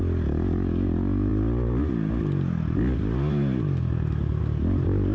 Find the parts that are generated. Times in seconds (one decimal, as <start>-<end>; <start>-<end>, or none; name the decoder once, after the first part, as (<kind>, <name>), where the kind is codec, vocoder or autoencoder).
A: none

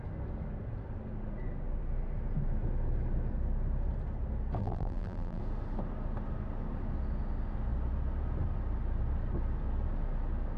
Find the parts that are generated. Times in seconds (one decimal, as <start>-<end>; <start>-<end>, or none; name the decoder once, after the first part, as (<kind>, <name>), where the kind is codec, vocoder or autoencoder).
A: 4.6-5.4 (vocoder, BigVGAN v2)

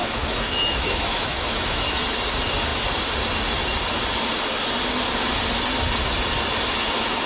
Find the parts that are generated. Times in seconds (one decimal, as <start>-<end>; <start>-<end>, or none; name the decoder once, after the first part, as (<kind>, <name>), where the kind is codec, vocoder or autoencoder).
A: 0.0-2.0 (autoencoder, DAC-VAE)

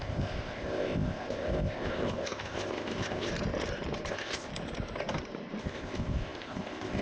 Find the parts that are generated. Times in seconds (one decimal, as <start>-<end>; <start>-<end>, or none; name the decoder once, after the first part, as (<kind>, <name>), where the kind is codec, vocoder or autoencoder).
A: 0.0-3.3 (codec, ZipCodec); 4.1-4.5; 5.6-7.0

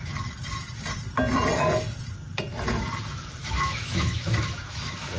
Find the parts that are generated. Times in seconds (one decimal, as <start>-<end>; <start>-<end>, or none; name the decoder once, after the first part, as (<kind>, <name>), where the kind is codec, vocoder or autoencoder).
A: 3.4-5.2 (autoencoder, DAC-VAE)

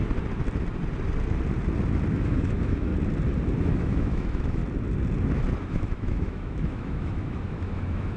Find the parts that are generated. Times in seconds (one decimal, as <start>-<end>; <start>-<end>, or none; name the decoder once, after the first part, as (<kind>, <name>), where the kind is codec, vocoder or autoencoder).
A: 2.1-2.9 (autoencoder, DAC-VAE); 3.6-4.6; 5.7-8.2

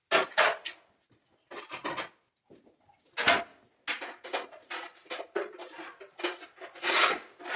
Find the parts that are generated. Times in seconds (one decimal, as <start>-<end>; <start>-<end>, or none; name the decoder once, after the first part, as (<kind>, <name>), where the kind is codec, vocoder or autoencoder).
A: none

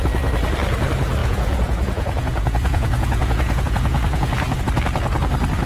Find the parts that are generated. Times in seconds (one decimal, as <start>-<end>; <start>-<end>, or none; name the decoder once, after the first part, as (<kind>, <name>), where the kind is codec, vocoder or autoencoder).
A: 1.2-4.6 (vocoder, Vocos)